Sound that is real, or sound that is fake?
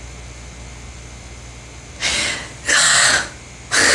real